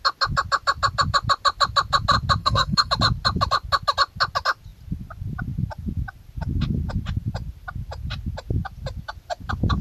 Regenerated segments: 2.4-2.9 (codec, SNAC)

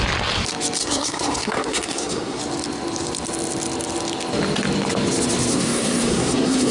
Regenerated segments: 0.8-2.4 (codec, SNAC); 5.5-6.7

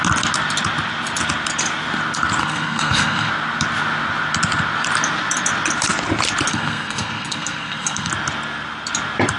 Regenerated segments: 2.4-3.3 (codec, SNAC); 6.5-8.1